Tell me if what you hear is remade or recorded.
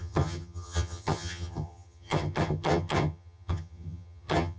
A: remade